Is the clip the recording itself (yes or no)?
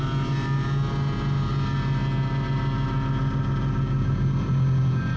yes